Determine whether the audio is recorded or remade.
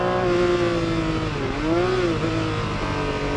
recorded